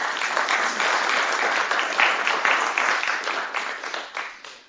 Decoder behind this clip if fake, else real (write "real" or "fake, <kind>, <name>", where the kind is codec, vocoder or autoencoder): real